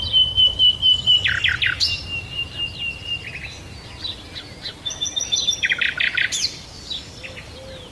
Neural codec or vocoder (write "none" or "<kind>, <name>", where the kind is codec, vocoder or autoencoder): none